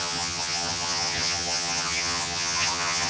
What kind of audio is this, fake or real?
fake